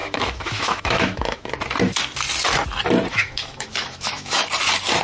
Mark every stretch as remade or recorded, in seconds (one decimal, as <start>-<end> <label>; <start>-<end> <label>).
0.0-1.5 remade; 1.5-3.1 recorded; 3.1-4.5 remade; 4.5-5.0 recorded